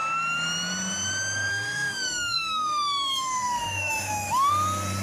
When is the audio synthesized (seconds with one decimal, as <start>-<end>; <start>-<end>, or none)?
1.5-4.5